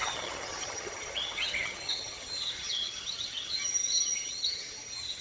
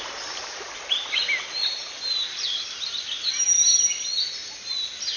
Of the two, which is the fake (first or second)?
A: first